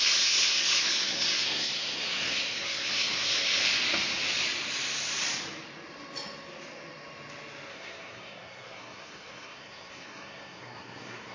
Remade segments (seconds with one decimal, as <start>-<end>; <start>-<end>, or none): 0.0-3.6; 7.7-11.3